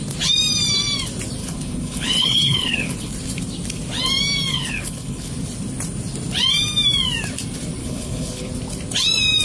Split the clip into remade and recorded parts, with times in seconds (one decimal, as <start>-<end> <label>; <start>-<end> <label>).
0.0-1.4 recorded; 1.4-3.1 remade; 3.1-4.5 recorded; 4.5-5.3 remade; 5.3-7.8 recorded; 7.8-8.5 remade; 8.5-9.4 recorded